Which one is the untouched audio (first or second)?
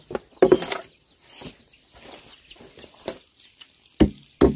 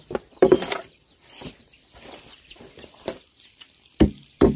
first